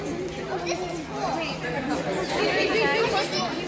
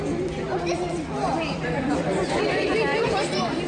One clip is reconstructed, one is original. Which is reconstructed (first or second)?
second